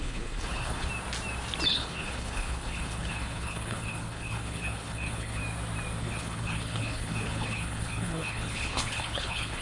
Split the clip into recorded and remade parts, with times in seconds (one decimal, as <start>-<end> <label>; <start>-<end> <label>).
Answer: 0.0-0.9 remade; 0.9-1.7 recorded; 1.7-5.4 remade; 5.4-6.0 recorded; 6.0-9.6 remade